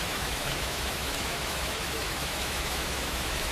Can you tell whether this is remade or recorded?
remade